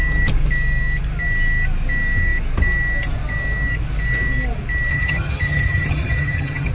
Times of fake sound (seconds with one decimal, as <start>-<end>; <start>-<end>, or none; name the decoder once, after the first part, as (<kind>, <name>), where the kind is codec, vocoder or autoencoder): 4.9-6.7 (vocoder, HiFi-GAN)